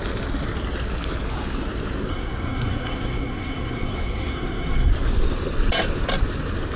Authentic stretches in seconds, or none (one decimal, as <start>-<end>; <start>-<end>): 0.0-2.1; 4.9-6.8